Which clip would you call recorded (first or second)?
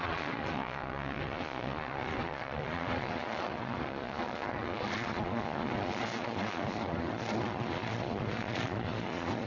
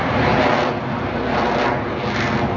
second